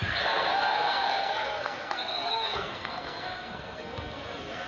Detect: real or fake fake